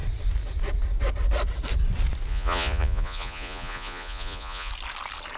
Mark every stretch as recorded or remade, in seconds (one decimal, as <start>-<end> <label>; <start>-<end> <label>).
0.0-2.3 recorded; 2.3-4.7 remade; 4.7-5.4 recorded